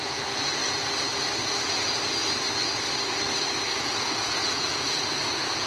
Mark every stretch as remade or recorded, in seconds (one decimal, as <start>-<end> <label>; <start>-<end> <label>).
0.0-0.6 remade; 0.6-4.0 recorded; 4.0-5.7 remade